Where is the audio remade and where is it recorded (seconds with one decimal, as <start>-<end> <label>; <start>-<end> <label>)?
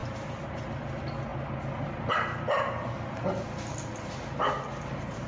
0.0-0.6 remade; 0.6-5.3 recorded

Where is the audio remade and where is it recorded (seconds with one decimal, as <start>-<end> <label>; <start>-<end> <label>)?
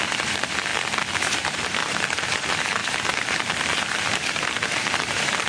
0.0-0.7 remade; 0.7-1.4 recorded; 1.4-5.5 remade